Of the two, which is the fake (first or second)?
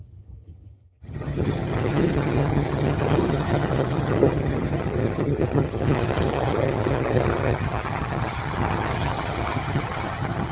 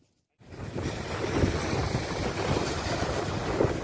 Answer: first